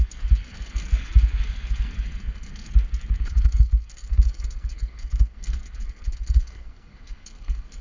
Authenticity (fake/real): fake